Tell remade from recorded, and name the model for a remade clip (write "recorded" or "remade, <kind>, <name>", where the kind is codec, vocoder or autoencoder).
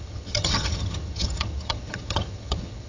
remade, vocoder, HiFi-GAN